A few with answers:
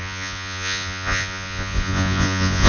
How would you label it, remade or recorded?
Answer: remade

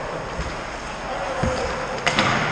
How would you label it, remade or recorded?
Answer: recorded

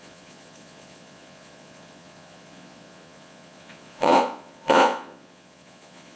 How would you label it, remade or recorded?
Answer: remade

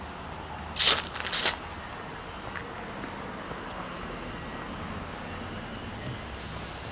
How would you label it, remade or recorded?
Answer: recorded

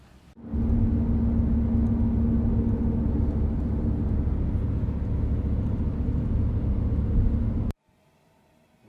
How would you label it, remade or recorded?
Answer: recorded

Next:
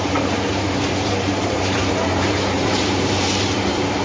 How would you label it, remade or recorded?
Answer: remade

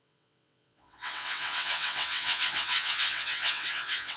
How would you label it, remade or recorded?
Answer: remade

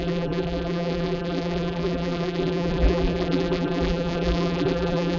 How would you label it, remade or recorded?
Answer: remade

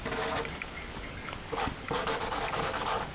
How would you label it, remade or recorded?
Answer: remade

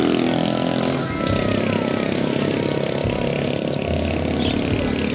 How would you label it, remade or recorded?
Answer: recorded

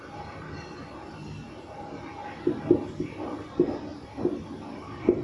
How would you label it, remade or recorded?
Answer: recorded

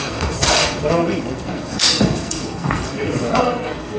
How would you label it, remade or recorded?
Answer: remade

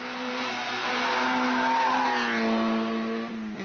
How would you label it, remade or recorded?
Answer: recorded